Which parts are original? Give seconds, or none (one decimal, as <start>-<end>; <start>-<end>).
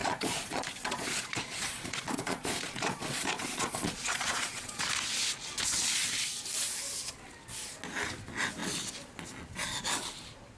4.8-10.6